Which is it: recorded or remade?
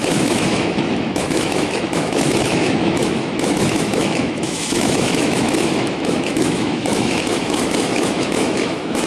remade